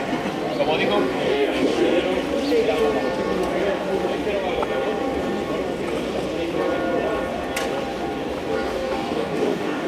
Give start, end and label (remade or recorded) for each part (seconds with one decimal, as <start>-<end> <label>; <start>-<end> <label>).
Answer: 0.0-1.1 recorded; 1.1-1.8 remade; 1.8-8.7 recorded; 8.7-9.9 remade